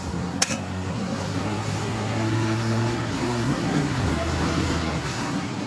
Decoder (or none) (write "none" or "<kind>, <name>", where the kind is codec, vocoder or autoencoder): codec, SNAC